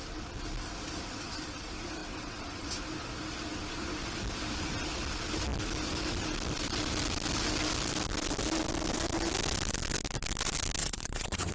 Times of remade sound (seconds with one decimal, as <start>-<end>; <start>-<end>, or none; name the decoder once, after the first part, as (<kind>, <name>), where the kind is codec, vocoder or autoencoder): 2.0-2.8 (vocoder, WaveNeXt); 10.8-11.5